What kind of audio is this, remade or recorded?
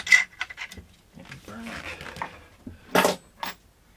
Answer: recorded